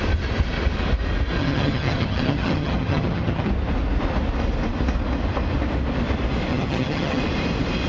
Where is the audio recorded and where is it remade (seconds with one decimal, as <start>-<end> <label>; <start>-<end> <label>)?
0.0-1.4 recorded; 1.4-3.5 remade; 3.5-6.5 recorded; 6.5-7.2 remade; 7.2-7.9 recorded